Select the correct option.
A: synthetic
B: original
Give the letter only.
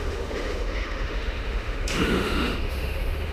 A